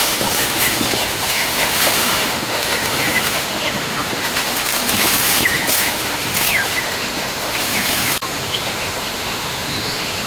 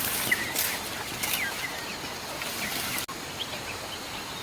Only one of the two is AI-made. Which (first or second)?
first